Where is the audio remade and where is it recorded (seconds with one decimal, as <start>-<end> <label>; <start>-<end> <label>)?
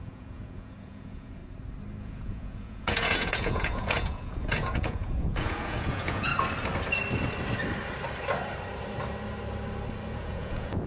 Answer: 0.0-1.4 remade; 1.4-2.0 recorded; 2.0-6.3 remade; 6.3-10.1 recorded; 10.1-10.9 remade